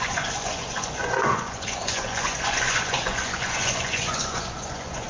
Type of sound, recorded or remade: remade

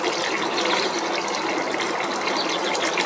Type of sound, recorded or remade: recorded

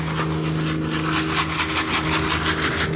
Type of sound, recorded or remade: recorded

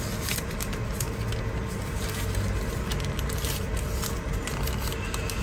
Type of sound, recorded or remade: recorded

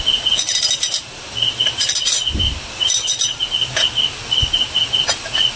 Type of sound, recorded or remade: recorded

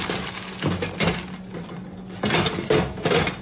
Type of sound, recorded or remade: recorded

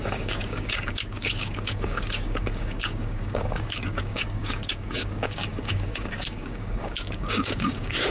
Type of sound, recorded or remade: remade